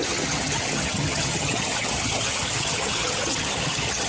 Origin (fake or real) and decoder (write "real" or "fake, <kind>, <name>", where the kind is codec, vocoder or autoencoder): fake, vocoder, HiFi-GAN